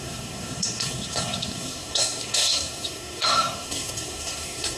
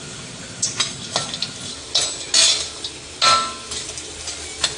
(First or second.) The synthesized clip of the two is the first